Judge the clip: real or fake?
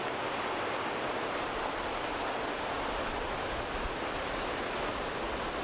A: real